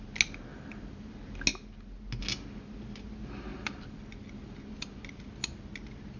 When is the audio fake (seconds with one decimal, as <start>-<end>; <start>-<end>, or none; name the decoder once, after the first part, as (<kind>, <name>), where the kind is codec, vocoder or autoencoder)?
0.5-1.1 (vocoder, BigVGAN v2); 3.5-4.6